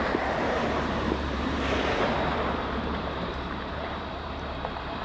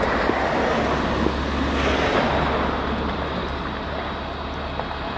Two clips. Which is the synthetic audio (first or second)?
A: first